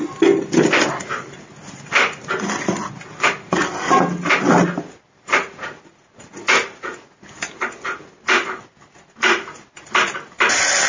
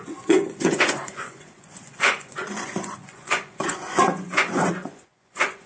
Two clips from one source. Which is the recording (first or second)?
first